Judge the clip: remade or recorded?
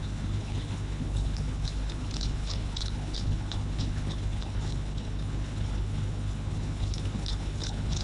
remade